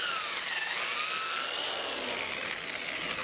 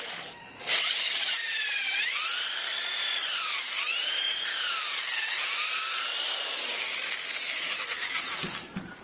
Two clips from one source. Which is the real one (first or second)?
first